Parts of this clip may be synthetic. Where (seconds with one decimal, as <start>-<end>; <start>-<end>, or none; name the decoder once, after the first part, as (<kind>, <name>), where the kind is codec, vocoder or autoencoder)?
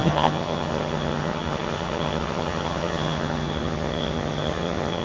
0.0-5.0 (vocoder, HiFi-GAN)